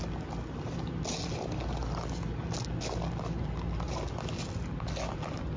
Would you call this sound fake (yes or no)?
no